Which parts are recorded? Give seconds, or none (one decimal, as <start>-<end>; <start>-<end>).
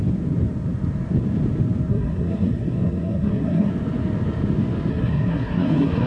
0.0-1.9; 3.7-4.9